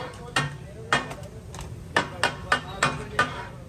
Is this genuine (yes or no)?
yes